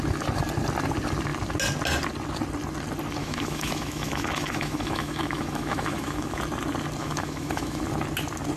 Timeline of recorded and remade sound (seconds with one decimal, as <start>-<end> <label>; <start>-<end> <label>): 0.0-3.2 recorded; 3.2-6.4 remade; 6.4-7.0 recorded; 7.0-7.8 remade; 7.8-8.6 recorded